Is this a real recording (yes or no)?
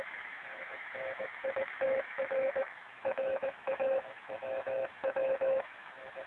no